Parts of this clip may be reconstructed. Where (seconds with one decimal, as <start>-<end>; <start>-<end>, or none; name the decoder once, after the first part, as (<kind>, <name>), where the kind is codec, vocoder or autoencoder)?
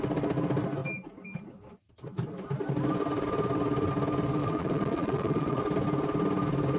4.4-5.6 (vocoder, Vocos)